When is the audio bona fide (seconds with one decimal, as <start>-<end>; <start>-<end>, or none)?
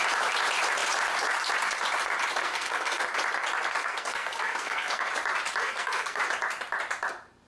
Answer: 0.0-2.4; 3.0-3.8; 5.1-5.6; 6.2-7.5